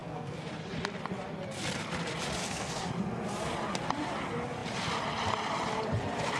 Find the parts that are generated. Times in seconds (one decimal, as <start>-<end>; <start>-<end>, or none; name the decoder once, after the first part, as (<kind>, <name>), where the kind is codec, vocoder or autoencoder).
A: 0.0-0.5 (codec, SNAC); 2.4-2.9

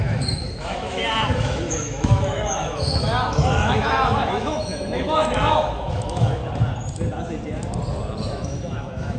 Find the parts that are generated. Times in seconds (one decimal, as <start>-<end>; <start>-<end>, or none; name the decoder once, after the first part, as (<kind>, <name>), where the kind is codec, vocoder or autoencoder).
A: 0.0-6.4 (autoencoder, DAC-VAE); 8.3-9.2

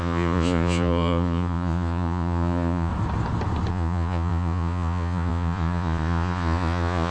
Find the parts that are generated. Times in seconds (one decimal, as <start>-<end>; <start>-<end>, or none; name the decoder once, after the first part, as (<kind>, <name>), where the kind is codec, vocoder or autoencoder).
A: 0.0-2.9 (vocoder, Vocos); 3.7-7.1

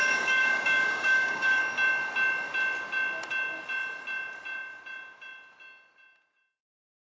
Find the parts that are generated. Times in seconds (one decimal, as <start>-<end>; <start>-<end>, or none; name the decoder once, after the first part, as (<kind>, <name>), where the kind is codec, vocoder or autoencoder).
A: 0.0-1.6 (codec, DAC)

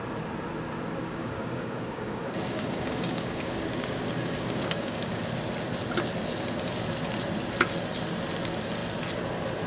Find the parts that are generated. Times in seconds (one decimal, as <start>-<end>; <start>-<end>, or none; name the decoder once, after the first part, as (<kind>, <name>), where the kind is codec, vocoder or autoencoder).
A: 1.0-5.2 (codec, DAC)

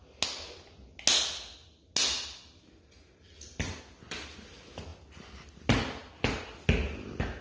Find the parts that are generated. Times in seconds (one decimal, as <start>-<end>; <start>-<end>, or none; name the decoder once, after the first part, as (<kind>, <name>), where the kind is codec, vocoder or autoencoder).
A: none

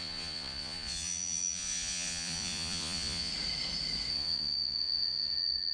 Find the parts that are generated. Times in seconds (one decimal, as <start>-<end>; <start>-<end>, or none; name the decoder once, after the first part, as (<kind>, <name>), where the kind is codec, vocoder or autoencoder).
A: 0.0-3.3 (vocoder, Vocos); 4.1-5.7